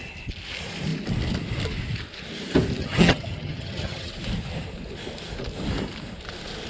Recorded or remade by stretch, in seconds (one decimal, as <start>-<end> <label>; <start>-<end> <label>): 0.0-2.8 recorded; 2.8-4.1 remade; 4.1-6.7 recorded

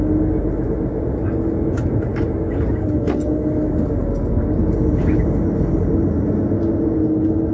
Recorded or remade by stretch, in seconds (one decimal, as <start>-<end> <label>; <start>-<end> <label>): 0.0-7.5 recorded